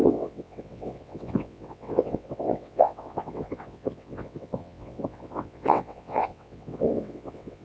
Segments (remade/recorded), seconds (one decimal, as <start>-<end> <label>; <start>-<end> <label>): 0.0-7.6 remade